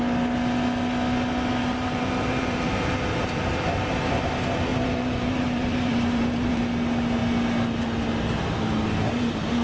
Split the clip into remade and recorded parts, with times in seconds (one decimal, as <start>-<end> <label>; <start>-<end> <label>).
0.0-1.6 recorded; 1.6-4.0 remade; 4.0-4.7 recorded; 4.7-6.6 remade; 6.6-9.6 recorded